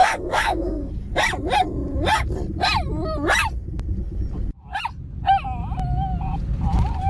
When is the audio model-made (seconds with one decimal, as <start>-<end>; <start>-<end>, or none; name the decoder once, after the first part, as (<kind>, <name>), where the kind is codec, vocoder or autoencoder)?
0.0-0.9 (codec, SNAC)